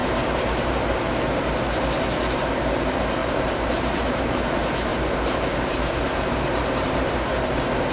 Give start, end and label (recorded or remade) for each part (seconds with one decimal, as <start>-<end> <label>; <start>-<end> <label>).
0.0-0.8 remade; 0.8-3.2 recorded; 3.2-4.4 remade; 4.4-4.9 recorded; 4.9-7.9 remade